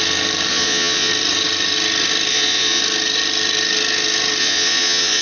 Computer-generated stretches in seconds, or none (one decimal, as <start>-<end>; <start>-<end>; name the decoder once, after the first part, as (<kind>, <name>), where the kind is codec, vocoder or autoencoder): 0.5-1.1 (vocoder, Vocos); 2.3-2.8; 4.4-5.2